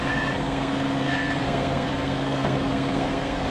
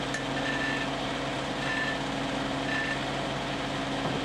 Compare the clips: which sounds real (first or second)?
second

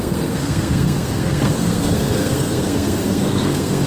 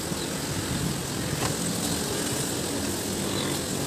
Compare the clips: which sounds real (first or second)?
second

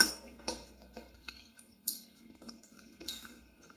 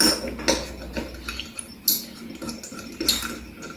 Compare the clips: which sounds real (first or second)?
second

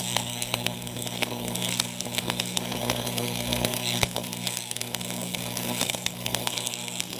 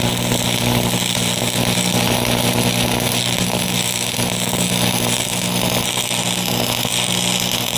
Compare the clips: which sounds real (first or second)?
second